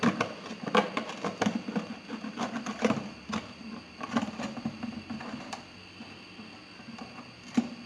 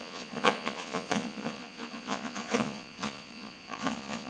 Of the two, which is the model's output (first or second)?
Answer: second